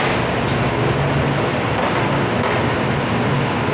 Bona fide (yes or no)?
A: yes